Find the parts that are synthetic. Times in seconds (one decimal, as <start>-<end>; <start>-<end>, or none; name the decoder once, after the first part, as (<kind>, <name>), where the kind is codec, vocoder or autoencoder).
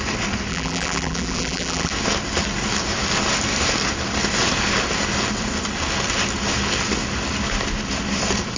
0.5-1.9 (vocoder, BigVGAN v2)